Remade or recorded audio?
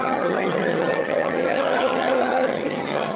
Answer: remade